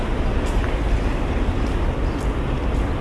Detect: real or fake real